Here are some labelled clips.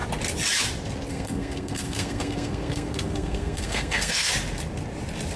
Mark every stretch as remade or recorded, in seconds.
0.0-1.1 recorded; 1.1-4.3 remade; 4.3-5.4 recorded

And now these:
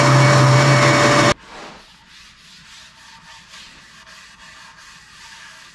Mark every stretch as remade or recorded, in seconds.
0.0-5.7 recorded